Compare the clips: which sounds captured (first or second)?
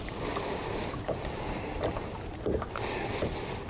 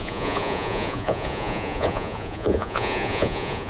first